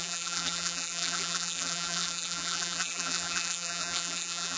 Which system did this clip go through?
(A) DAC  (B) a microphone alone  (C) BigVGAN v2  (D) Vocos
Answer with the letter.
C